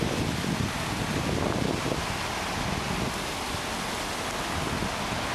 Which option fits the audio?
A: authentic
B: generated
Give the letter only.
A